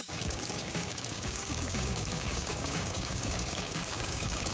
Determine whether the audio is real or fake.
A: fake